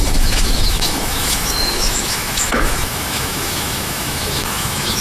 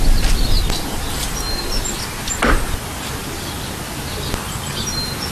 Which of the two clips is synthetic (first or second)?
first